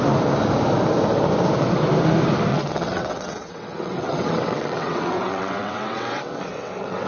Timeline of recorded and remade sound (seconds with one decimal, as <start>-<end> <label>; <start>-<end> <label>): 0.0-2.5 recorded; 2.5-7.1 remade